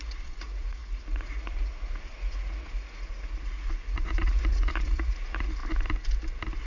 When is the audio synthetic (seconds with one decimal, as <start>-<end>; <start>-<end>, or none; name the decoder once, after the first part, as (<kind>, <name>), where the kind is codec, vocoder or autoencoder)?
0.0-5.6 (vocoder, Vocos)

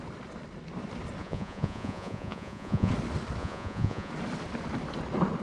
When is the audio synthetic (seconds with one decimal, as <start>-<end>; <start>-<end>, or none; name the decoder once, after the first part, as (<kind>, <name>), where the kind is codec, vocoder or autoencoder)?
1.2-2.9 (vocoder, Vocos); 3.4-4.1

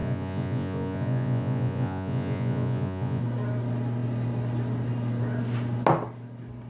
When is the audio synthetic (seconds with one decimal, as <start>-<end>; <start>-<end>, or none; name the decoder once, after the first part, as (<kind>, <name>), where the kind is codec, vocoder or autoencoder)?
0.0-3.2 (vocoder, Vocos)